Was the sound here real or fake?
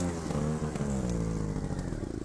real